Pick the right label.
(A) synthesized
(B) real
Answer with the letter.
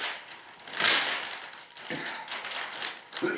B